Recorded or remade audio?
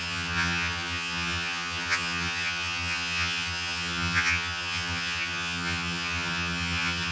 remade